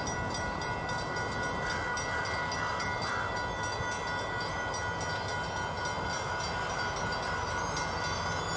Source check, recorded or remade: recorded